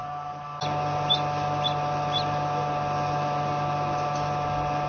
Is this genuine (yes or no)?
yes